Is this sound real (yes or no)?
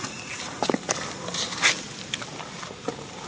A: yes